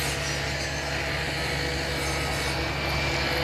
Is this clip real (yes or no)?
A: yes